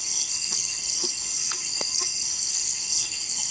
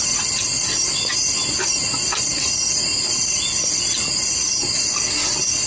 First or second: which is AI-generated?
first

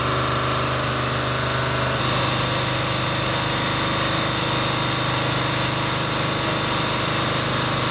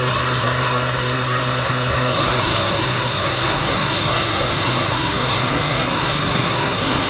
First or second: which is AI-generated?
second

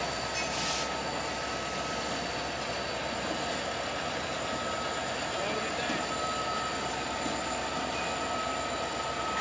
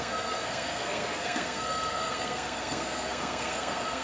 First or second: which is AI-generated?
second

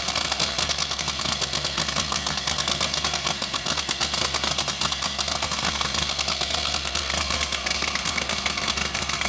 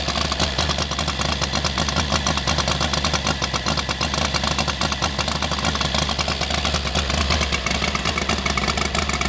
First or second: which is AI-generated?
first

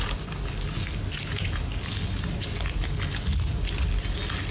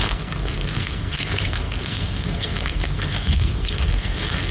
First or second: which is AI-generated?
second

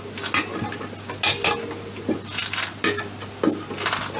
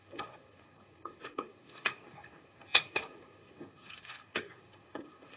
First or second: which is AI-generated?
second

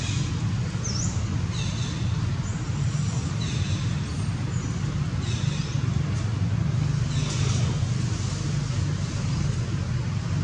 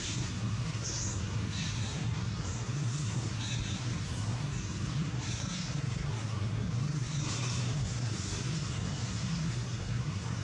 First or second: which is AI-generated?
second